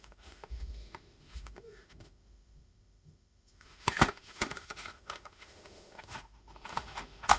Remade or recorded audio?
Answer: remade